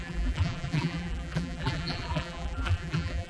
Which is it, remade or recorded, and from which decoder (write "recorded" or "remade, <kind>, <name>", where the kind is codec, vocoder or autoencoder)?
remade, vocoder, BigVGAN v2